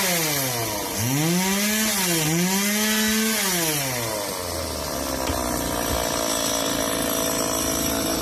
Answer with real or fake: real